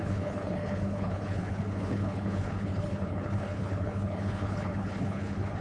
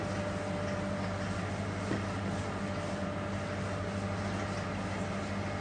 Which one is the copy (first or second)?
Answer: first